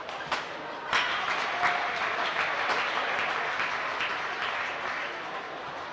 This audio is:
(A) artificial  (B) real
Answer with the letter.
B